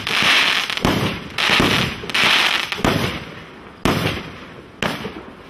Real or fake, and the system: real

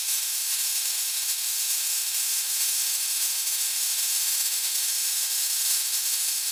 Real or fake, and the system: fake, autoencoder, DAC-VAE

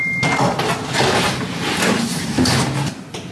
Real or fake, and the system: real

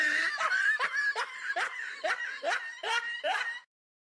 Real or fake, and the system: fake, vocoder, BigVGAN v2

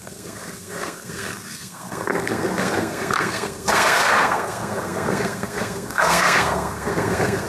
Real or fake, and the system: fake, codec, SNAC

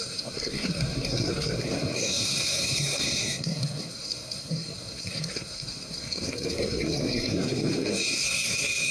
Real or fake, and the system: fake, codec, SNAC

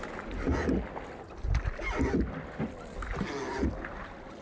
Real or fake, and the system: real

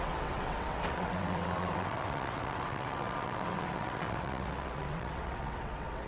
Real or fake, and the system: fake, vocoder, WaveNeXt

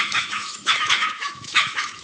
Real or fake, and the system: fake, autoencoder, DAC-VAE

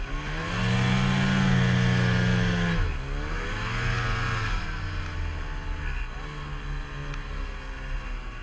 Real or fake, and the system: real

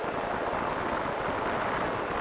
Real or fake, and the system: real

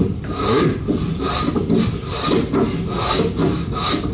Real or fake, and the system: real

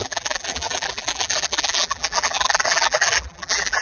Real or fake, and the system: fake, vocoder, BigVGAN v2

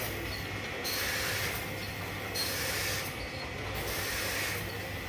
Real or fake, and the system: real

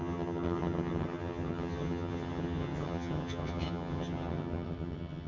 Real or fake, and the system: fake, vocoder, HiFi-GAN